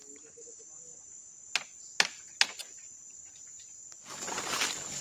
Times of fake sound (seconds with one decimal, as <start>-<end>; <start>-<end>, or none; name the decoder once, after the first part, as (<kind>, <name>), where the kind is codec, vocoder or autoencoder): none